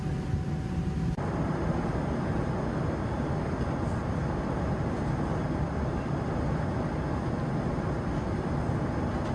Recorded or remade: recorded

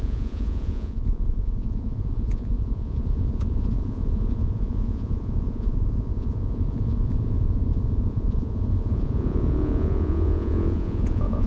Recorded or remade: remade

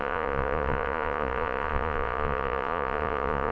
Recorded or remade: remade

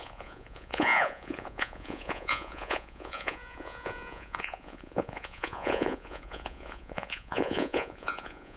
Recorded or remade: remade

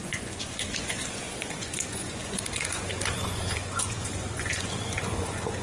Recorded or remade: remade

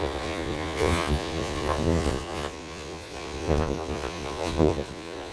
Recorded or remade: remade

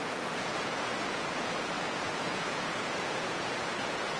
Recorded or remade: remade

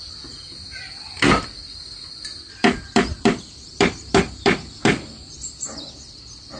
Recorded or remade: recorded